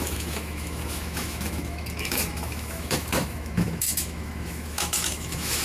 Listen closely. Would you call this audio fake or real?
fake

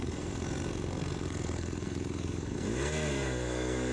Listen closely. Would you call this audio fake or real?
fake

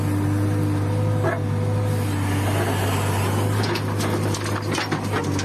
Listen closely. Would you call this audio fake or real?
real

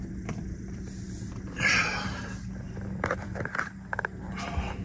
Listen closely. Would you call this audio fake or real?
fake